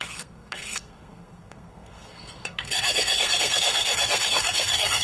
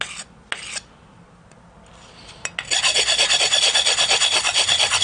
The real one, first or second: second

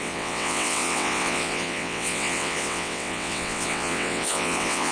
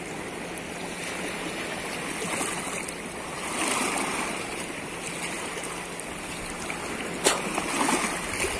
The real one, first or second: second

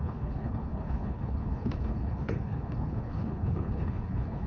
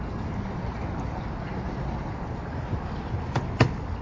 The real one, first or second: second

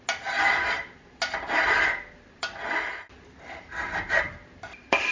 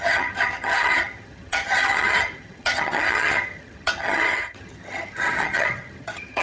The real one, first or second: first